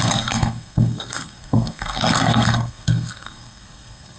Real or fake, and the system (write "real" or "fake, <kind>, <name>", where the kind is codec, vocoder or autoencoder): fake, codec, SNAC